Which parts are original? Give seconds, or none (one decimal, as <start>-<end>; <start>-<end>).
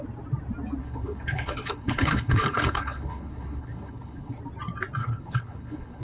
0.0-0.8; 4.4-5.0